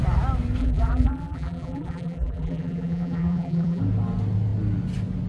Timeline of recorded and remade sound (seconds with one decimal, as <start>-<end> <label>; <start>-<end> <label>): 0.0-0.6 recorded; 0.6-3.8 remade; 3.8-5.3 recorded